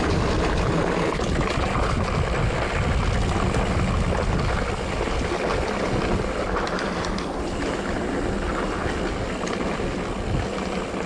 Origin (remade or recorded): recorded